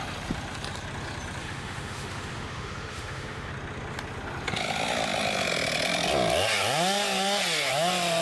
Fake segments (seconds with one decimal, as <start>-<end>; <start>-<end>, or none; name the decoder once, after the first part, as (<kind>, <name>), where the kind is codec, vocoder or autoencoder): 1.4-3.5 (autoencoder, DAC-VAE)